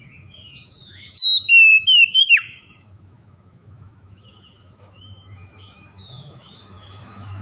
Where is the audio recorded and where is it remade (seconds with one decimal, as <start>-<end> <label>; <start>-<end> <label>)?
0.0-7.4 remade